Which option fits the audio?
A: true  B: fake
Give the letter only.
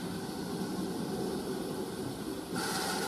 A